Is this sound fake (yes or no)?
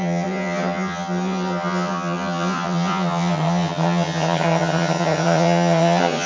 yes